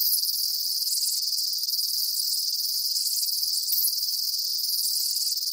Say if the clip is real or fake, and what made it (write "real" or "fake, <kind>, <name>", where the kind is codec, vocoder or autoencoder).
real